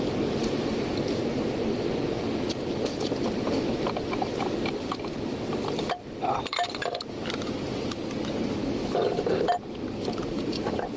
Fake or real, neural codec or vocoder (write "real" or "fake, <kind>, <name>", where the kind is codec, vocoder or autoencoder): real